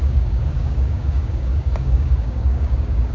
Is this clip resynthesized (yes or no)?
yes